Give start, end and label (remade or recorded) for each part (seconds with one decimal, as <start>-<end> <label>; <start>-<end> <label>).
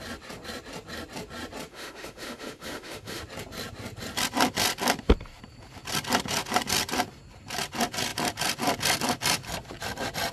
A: 0.0-1.7 recorded; 1.7-3.2 remade; 3.2-10.3 recorded